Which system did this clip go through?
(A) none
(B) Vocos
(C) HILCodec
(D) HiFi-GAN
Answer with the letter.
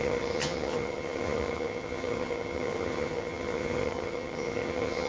D